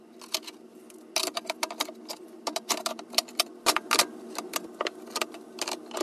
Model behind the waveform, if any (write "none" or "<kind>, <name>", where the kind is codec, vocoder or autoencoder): none